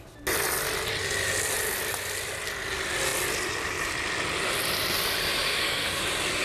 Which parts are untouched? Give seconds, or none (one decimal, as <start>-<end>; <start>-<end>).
0.0-5.5; 6.0-6.4